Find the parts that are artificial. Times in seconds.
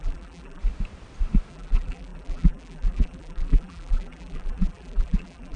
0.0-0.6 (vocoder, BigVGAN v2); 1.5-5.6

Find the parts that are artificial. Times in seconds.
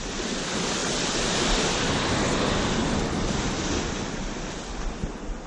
none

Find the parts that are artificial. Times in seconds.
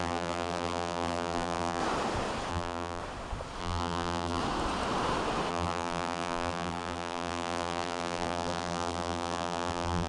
0.0-1.8 (vocoder, BigVGAN v2); 2.5-3.0; 3.6-4.4; 5.5-10.1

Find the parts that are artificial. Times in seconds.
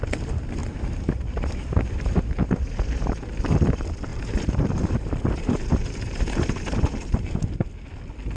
0.6-3.4 (vocoder, BigVGAN v2); 4.1-7.5